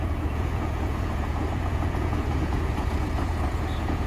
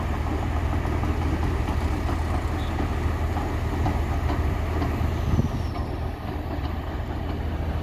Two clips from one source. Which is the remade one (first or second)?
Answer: first